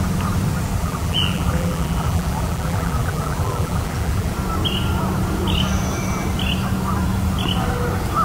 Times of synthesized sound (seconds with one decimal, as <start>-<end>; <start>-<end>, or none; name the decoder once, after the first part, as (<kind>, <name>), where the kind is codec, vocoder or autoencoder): 0.8-4.3 (vocoder, BigVGAN v2)